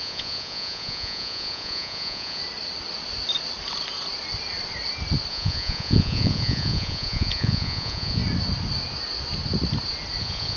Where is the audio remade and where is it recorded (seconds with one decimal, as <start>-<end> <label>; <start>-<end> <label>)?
0.0-2.4 remade; 2.4-5.3 recorded; 5.3-8.2 remade; 8.2-10.2 recorded; 10.2-10.6 remade